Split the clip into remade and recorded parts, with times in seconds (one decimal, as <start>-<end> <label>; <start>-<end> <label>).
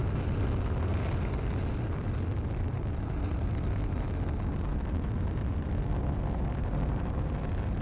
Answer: 0.0-0.9 recorded; 0.9-4.0 remade; 4.0-4.7 recorded; 4.7-5.9 remade; 5.9-7.8 recorded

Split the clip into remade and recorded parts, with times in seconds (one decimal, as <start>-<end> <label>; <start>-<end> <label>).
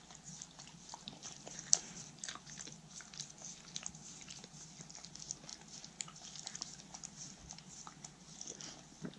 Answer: 0.0-1.2 recorded; 1.2-2.2 remade; 2.2-5.5 recorded; 5.5-9.2 remade